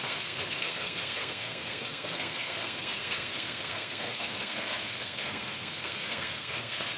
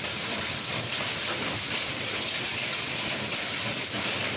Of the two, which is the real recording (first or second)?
second